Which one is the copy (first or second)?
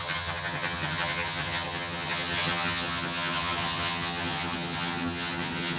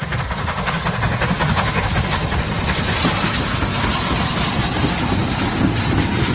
first